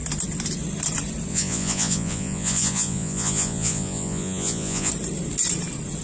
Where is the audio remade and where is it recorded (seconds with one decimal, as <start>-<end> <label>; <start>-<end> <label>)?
0.0-1.3 recorded; 1.3-4.9 remade; 4.9-6.0 recorded